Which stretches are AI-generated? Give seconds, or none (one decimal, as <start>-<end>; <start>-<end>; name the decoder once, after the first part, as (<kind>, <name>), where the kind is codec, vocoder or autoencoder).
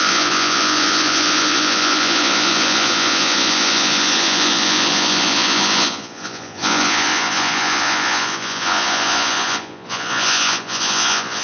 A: 0.0-11.4 (vocoder, Vocos)